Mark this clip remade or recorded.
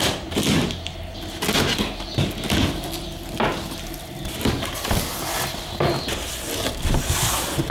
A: recorded